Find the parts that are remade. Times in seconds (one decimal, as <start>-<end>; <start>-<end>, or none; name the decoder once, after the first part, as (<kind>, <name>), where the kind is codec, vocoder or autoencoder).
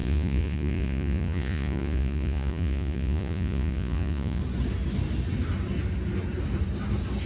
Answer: 0.0-4.4 (vocoder, Vocos)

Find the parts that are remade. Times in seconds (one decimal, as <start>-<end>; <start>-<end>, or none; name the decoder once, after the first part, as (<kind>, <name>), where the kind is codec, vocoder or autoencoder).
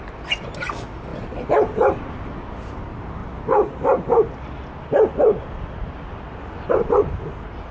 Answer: none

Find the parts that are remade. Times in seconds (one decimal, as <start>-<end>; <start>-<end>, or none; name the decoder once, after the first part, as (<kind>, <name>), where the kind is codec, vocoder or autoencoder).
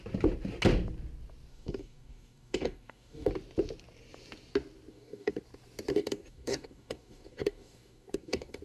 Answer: 1.5-3.3 (codec, DAC); 4.9-5.4; 5.9-8.6